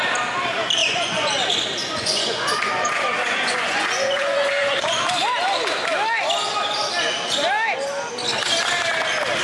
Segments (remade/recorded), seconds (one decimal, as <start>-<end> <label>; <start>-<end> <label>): 0.0-0.8 recorded; 0.8-1.3 remade; 1.3-1.8 recorded; 1.8-5.0 remade; 5.0-9.4 recorded